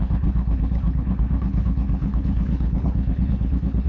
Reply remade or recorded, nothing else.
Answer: remade